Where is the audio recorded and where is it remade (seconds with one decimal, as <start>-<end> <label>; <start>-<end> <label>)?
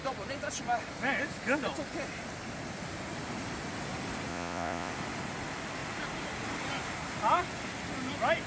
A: 0.0-4.3 recorded; 4.3-4.9 remade; 4.9-8.5 recorded